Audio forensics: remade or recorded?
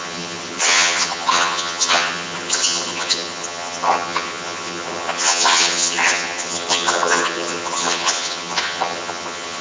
remade